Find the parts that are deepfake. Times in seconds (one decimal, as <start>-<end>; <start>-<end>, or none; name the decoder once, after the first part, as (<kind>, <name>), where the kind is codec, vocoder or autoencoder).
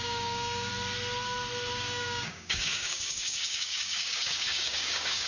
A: 0.0-0.7 (codec, DAC); 1.7-5.3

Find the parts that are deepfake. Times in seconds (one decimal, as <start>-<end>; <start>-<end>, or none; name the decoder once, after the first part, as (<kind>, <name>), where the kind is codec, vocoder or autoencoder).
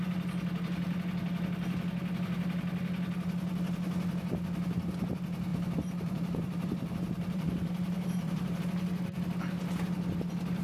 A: 5.5-8.6 (vocoder, BigVGAN v2)